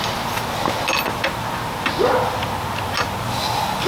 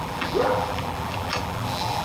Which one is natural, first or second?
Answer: first